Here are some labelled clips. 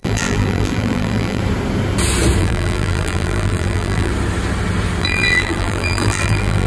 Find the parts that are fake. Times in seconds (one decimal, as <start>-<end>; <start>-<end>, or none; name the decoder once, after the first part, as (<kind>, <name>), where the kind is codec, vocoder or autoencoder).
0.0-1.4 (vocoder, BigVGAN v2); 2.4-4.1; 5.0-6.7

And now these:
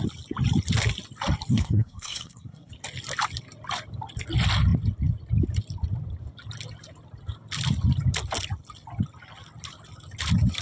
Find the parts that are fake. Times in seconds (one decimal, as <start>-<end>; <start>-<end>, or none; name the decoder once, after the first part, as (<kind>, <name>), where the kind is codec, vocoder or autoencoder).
1.5-2.7 (codec, SNAC)

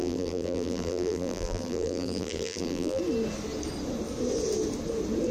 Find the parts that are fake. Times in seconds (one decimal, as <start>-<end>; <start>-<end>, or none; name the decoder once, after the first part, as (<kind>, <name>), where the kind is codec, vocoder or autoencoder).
0.0-3.0 (vocoder, BigVGAN v2)